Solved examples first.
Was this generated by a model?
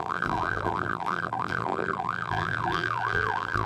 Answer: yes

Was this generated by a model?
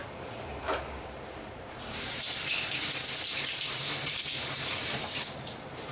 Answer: yes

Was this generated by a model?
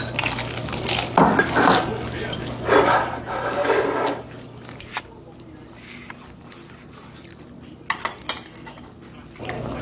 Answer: no